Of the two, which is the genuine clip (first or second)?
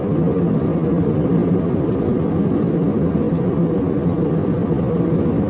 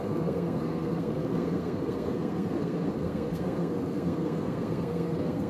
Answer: first